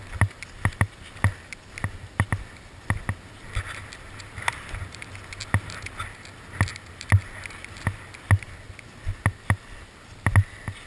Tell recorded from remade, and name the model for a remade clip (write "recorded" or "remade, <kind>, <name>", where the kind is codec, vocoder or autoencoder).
recorded